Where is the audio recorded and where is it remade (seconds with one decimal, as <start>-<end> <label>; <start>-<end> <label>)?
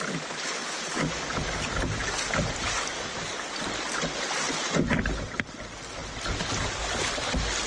0.0-7.7 recorded